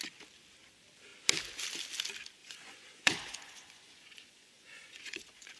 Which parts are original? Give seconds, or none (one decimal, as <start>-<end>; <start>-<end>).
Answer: 0.0-2.4